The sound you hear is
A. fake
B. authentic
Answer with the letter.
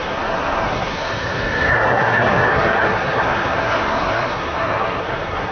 A